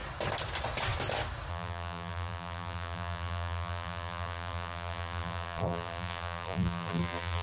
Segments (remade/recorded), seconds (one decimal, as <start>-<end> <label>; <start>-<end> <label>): 0.0-1.5 recorded; 1.5-7.4 remade